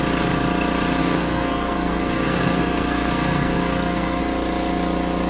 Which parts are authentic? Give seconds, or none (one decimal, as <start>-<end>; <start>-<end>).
0.0-1.0; 4.2-5.3